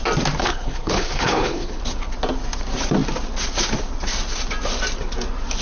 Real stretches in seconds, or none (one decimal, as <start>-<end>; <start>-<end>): 0.0-0.4; 1.8-5.6